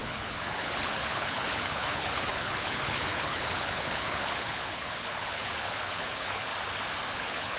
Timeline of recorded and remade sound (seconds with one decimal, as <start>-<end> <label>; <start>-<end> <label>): 0.0-6.5 remade; 6.5-7.1 recorded; 7.1-7.6 remade